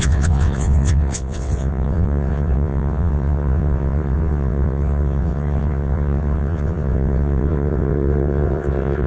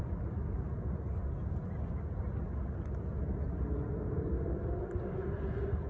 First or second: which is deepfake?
first